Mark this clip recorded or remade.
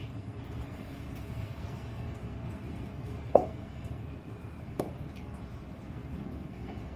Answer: remade